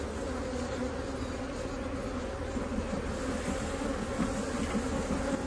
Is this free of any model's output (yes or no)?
yes